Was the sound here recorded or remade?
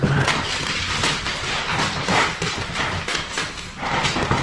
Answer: recorded